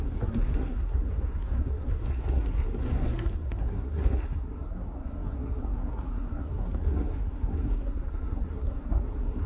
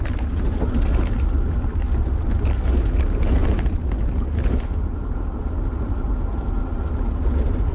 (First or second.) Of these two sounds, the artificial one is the first